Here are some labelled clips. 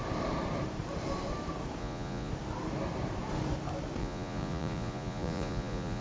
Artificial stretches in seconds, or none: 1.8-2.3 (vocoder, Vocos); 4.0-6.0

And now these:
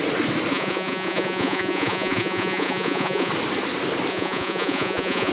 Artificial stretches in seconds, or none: 0.5-3.3 (vocoder, Vocos); 4.1-5.3

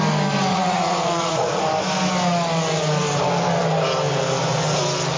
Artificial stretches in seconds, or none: 0.5-1.6 (vocoder, Vocos)

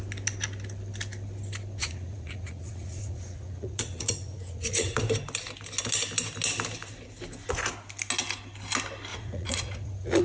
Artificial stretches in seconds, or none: 1.8-5.0 (vocoder, Vocos); 9.1-10.2

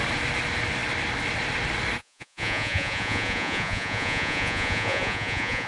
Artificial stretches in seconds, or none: 2.0-5.7 (vocoder, Vocos)